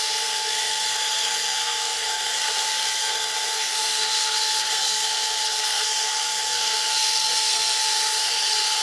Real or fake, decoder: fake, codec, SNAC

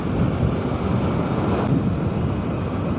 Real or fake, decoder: real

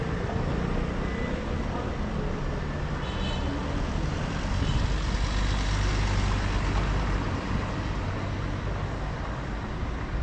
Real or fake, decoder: real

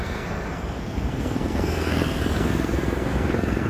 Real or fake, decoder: fake, codec, SNAC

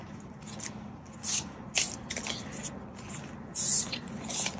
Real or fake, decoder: real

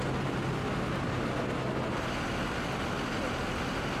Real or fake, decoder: real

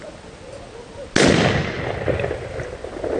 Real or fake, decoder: real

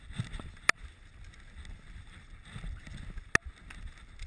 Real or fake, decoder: real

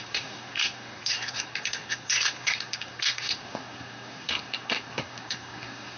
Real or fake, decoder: fake, codec, SNAC